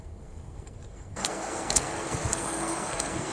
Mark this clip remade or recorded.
remade